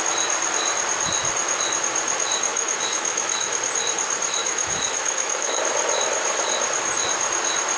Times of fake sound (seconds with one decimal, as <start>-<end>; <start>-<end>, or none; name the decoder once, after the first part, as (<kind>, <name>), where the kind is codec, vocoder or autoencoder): 2.5-3.6 (autoencoder, DAC-VAE); 4.4-5.6